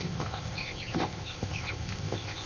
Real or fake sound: fake